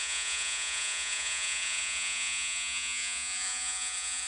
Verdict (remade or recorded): remade